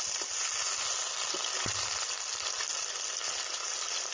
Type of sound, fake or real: real